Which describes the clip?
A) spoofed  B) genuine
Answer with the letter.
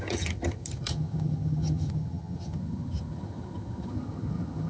A